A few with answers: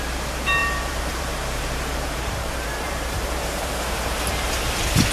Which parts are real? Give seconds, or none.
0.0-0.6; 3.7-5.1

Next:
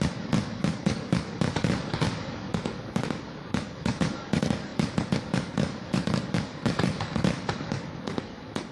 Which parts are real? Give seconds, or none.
none

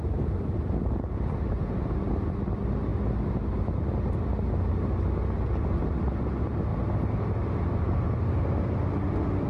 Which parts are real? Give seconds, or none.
0.0-9.5

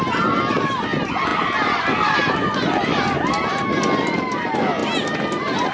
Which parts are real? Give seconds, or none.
0.0-5.7

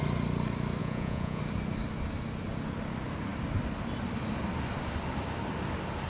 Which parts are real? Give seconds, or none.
0.0-0.8; 1.4-6.1

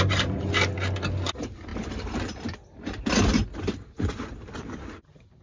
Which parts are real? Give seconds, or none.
0.0-5.4

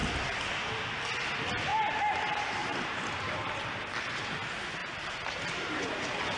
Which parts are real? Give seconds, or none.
0.0-2.6; 3.5-4.8

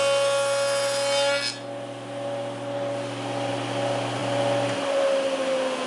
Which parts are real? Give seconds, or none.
0.0-5.9